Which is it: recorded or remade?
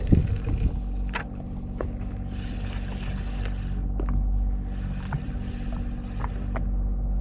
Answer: recorded